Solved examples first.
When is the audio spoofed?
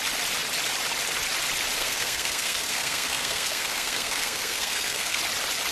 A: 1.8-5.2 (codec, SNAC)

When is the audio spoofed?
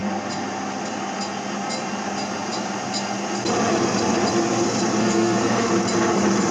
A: 5.0-5.7 (codec, SNAC)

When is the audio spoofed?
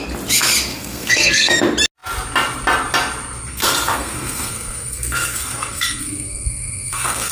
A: 0.7-1.6 (codec, SNAC); 3.5-7.3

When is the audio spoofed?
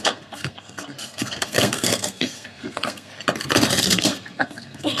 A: 0.0-3.1 (codec, SNAC); 3.8-5.0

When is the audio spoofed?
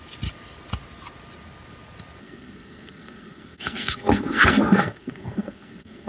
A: 2.2-6.1 (codec, SNAC)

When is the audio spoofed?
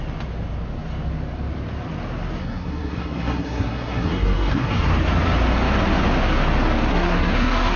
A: 2.4-4.9 (codec, SNAC); 6.9-7.8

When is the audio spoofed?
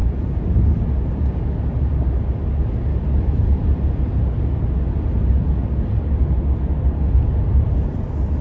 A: none